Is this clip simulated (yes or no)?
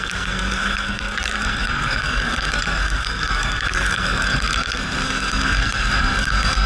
yes